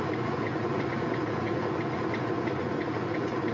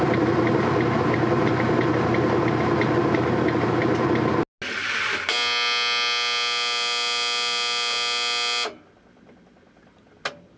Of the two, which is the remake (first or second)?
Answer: first